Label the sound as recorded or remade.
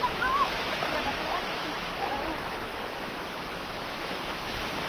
remade